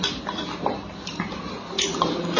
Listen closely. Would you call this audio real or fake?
real